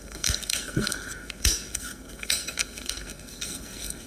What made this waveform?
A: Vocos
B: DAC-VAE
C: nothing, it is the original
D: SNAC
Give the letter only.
D